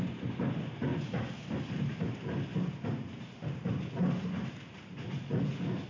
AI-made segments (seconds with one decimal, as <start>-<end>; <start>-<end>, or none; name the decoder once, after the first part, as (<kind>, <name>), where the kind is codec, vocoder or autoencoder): none